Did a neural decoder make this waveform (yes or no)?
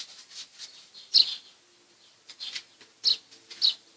no